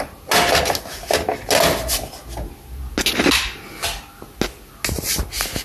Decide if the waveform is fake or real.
real